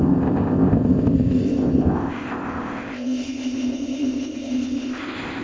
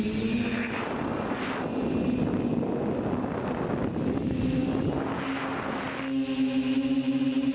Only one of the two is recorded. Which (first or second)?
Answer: second